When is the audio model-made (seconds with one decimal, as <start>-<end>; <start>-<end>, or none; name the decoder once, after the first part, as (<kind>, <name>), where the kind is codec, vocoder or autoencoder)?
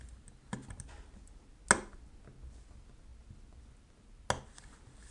none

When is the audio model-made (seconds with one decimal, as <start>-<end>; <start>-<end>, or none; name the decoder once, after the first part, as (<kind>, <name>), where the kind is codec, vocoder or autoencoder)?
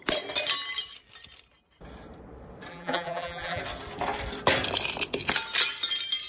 2.7-3.6 (vocoder, BigVGAN v2)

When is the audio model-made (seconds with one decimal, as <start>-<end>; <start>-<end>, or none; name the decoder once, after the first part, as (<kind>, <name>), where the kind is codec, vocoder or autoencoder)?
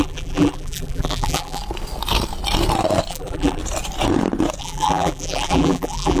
0.0-1.6 (vocoder, BigVGAN v2); 3.1-3.6; 4.6-6.2